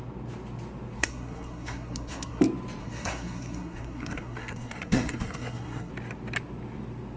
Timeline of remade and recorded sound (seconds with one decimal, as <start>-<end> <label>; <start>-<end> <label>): 0.0-1.0 recorded; 1.0-2.4 remade; 2.4-2.8 recorded; 2.8-5.9 remade; 5.9-7.2 recorded